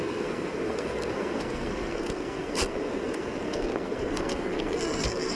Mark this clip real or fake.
fake